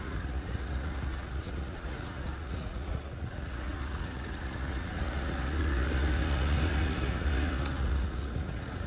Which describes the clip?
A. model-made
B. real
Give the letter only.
A